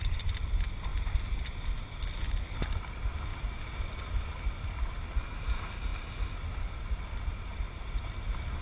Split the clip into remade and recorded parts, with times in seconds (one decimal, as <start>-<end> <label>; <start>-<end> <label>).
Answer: 0.0-8.6 recorded